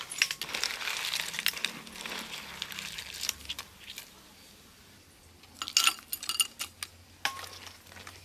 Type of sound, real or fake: real